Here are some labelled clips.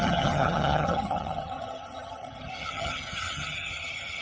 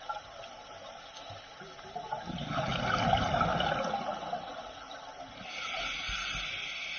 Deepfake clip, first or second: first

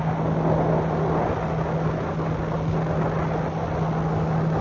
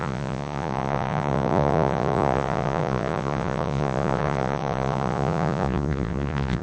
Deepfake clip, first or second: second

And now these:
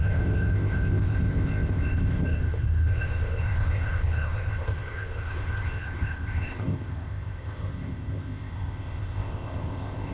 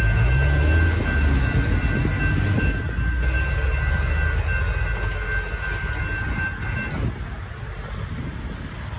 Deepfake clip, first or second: first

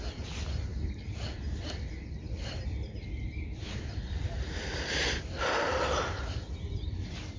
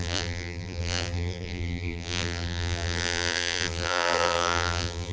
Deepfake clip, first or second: second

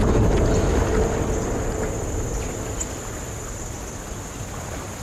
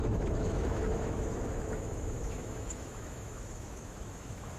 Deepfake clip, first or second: second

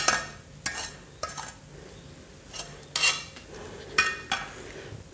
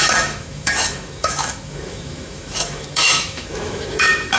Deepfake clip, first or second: second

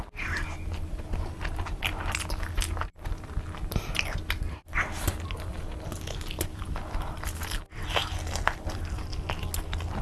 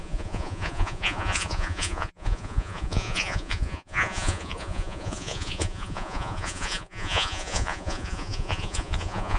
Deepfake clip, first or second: second